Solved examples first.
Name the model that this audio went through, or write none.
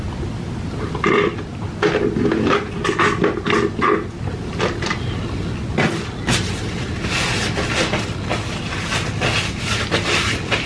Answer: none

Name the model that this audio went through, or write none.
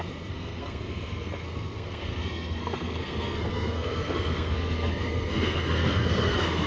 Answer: codec, SNAC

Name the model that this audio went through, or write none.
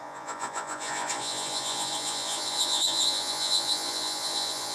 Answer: vocoder, Vocos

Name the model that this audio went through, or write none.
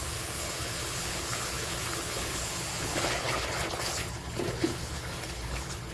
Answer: codec, HILCodec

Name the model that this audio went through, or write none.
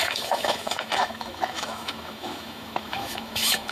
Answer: autoencoder, DAC-VAE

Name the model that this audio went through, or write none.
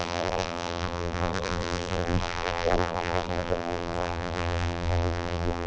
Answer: vocoder, BigVGAN v2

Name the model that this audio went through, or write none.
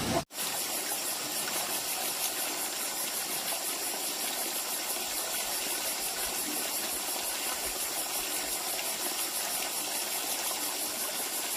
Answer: none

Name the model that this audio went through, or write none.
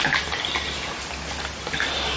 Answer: none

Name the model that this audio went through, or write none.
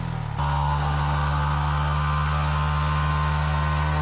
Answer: none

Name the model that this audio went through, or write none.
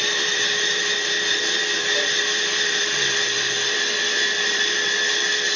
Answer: vocoder, BigVGAN v2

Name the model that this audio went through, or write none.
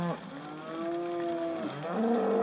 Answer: none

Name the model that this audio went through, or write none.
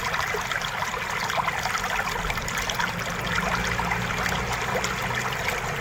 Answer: none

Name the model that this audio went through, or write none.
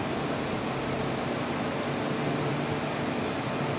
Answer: none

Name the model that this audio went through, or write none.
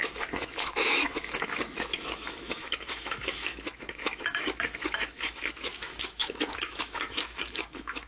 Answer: autoencoder, DAC-VAE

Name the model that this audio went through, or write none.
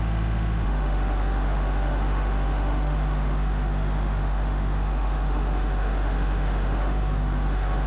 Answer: autoencoder, DAC-VAE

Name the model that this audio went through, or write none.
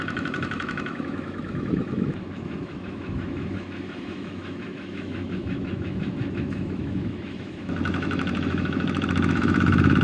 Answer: autoencoder, DAC-VAE